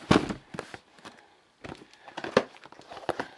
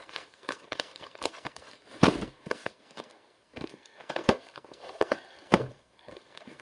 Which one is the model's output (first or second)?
second